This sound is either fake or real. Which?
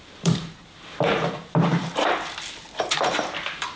fake